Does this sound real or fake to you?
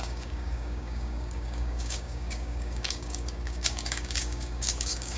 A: fake